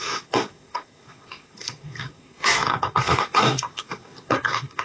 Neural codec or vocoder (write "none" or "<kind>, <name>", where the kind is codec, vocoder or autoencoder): codec, SNAC